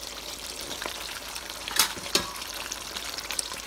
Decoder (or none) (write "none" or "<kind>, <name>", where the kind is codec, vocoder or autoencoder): vocoder, BigVGAN v2